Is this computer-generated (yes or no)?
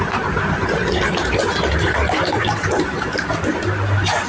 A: no